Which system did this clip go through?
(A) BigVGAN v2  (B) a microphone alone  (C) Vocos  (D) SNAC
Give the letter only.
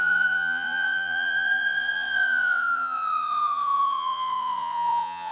C